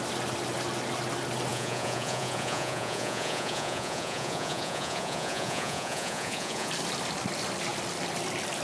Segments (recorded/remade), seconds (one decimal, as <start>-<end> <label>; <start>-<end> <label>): 0.0-1.5 recorded; 1.5-6.7 remade; 6.7-8.6 recorded